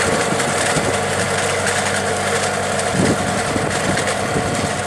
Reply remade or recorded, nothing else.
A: recorded